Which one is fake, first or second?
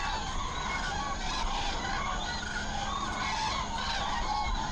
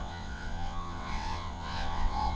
second